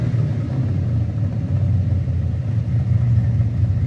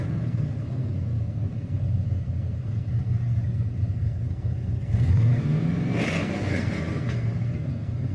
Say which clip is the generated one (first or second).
second